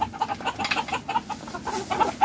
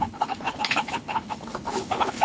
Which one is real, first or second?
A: first